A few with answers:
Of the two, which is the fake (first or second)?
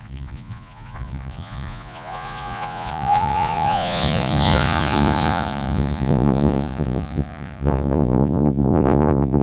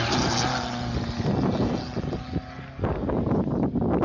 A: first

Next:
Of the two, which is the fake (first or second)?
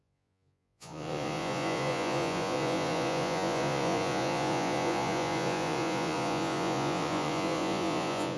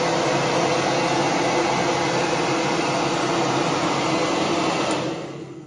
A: first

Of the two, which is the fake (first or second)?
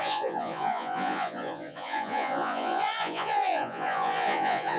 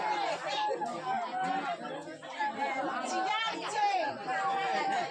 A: first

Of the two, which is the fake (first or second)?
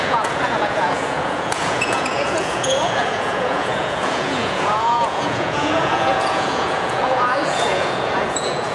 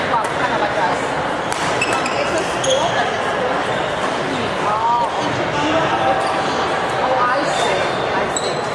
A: first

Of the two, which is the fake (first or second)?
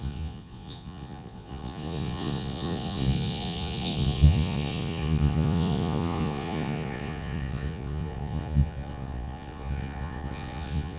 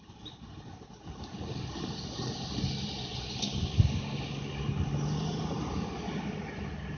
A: first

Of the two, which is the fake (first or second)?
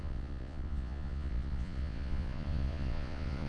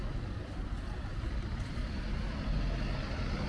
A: first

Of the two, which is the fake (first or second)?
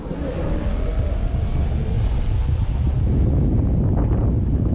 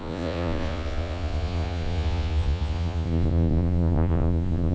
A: second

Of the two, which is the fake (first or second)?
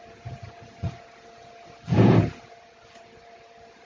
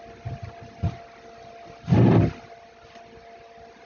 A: first